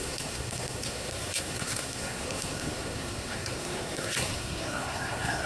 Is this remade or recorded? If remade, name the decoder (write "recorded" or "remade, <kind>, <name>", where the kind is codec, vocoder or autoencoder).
remade, codec, SNAC